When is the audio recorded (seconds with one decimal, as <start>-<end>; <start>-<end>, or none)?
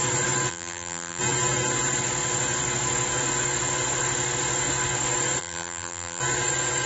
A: 0.0-0.5; 1.2-5.4; 6.2-6.9